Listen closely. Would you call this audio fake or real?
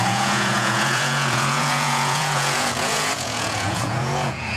fake